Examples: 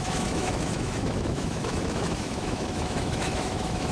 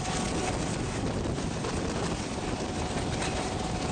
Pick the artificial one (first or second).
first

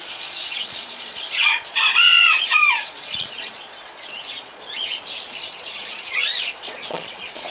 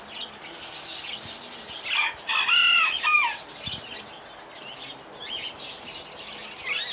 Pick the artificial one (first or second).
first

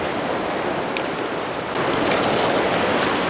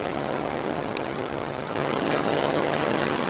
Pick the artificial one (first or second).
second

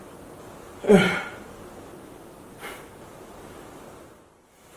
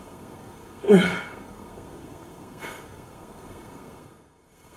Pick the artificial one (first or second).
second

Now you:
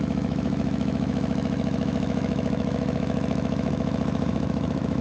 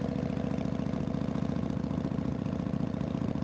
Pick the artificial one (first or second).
first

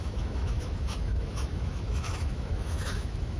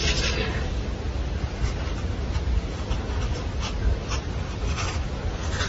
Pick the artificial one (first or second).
first